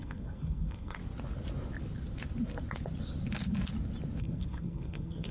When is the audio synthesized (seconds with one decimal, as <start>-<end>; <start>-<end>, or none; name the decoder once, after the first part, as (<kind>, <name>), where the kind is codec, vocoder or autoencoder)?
0.0-1.0 (codec, SNAC); 4.2-5.3